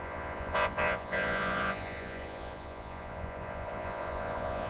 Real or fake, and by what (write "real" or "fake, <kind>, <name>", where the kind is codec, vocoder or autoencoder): fake, vocoder, Vocos